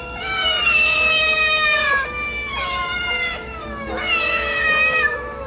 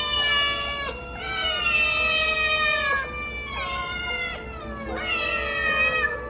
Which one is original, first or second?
second